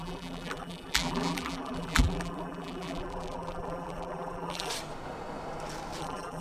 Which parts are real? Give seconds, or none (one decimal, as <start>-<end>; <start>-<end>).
4.7-6.0